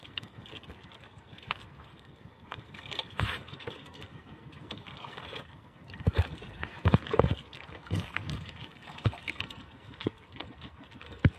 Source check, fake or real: fake